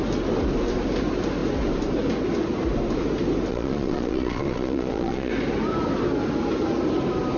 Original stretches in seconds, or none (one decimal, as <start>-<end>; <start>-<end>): 0.0-3.5; 5.3-7.4